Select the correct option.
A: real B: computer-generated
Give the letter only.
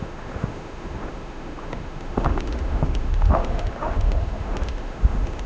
B